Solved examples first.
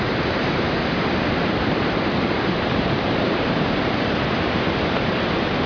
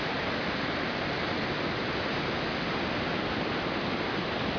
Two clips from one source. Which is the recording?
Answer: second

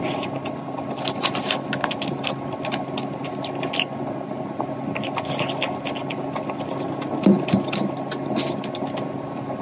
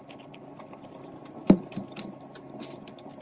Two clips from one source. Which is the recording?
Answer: first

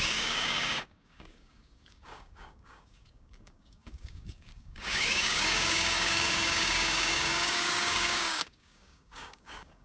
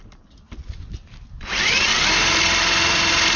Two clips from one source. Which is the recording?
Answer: second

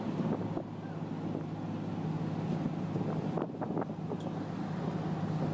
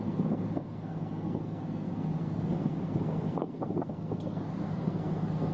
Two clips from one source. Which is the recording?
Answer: first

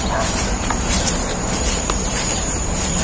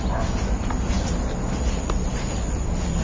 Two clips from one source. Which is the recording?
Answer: second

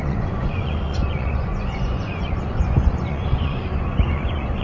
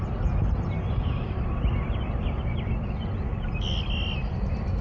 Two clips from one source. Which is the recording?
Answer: second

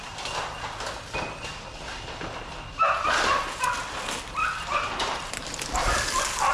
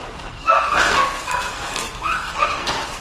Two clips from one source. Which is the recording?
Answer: first